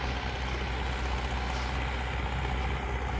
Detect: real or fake real